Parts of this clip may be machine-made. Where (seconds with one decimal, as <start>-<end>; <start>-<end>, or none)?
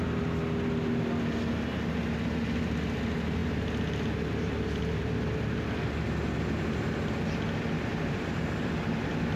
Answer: 7.9-8.5